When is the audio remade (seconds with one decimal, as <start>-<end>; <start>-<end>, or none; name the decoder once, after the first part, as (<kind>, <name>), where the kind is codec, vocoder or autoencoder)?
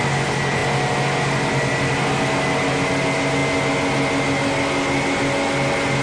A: none